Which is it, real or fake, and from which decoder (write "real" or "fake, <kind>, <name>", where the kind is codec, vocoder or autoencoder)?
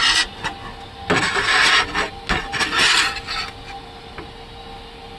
real